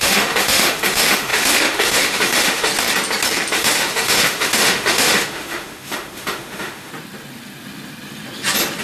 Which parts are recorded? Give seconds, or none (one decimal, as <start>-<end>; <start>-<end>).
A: 2.7-3.5; 6.9-8.8